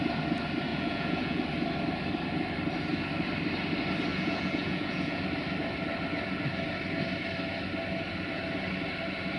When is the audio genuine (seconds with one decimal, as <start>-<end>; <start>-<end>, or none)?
0.0-0.7; 1.4-4.1; 5.2-9.4